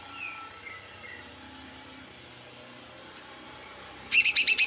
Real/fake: real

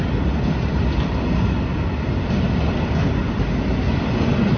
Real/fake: real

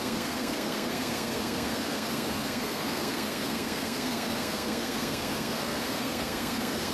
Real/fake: fake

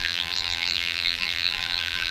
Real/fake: fake